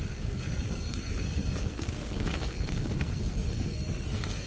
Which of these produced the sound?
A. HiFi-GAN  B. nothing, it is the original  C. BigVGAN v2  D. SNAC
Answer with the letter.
D